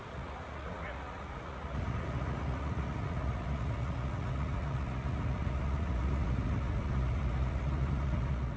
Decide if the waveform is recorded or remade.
remade